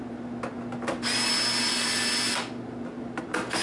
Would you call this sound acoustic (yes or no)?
yes